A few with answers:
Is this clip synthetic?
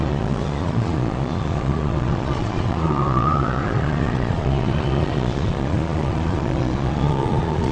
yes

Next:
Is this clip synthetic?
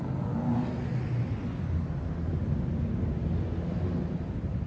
no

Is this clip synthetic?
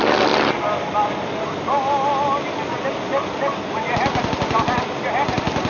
no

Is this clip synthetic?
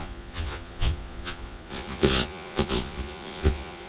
yes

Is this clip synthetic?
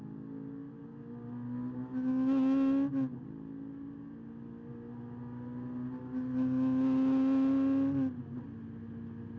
no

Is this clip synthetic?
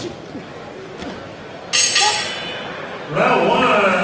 no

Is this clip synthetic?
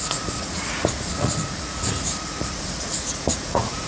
yes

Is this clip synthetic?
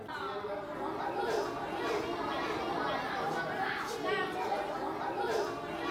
no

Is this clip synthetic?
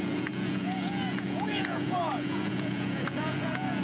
yes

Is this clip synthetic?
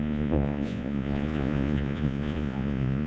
yes